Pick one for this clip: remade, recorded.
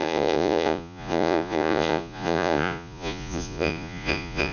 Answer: remade